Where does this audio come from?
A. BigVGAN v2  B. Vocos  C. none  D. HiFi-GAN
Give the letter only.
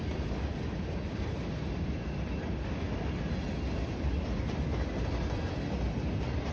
C